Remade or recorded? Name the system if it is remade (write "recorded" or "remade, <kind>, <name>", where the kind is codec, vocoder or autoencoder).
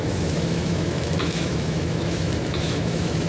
remade, autoencoder, DAC-VAE